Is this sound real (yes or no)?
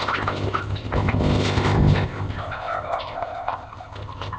no